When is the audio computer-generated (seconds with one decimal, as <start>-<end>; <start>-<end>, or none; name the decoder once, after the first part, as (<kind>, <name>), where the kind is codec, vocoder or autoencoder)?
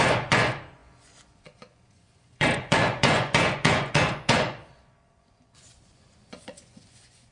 0.0-7.3 (vocoder, Vocos)